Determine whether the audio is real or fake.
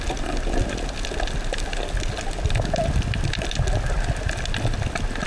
real